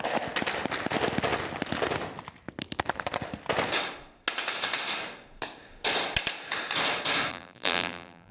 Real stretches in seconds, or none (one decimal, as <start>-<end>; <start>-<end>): 0.0-7.3